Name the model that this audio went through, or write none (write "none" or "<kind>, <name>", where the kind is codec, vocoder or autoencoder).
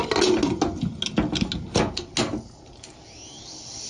none